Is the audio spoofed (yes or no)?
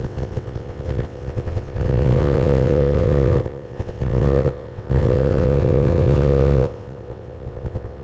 yes